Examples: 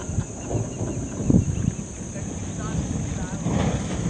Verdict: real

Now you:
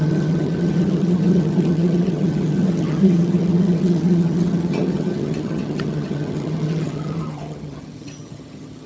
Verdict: fake